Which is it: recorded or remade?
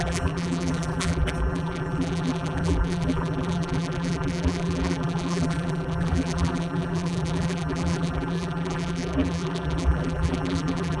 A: remade